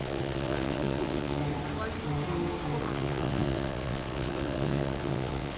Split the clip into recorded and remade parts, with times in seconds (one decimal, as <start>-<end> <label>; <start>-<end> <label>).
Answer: 0.0-1.4 remade; 1.4-2.8 recorded; 2.8-5.6 remade